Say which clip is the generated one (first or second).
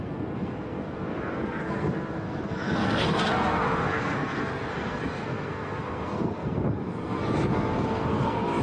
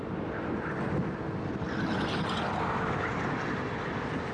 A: first